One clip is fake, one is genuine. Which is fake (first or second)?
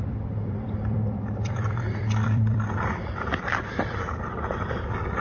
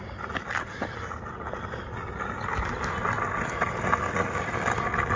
first